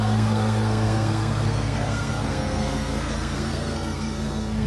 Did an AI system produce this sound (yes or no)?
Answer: yes